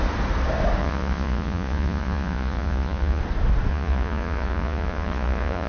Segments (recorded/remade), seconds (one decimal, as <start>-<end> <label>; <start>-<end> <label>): 0.0-0.8 recorded; 0.8-3.2 remade; 3.2-3.7 recorded; 3.7-5.7 remade